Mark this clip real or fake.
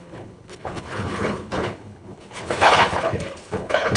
fake